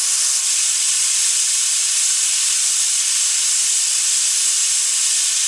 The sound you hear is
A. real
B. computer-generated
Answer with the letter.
A